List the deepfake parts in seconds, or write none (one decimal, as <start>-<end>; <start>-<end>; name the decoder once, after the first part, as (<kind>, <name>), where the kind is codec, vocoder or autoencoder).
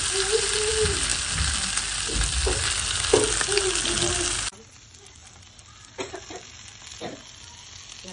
none